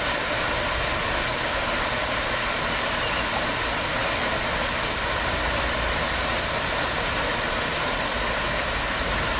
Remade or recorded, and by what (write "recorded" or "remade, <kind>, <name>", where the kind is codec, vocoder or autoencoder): recorded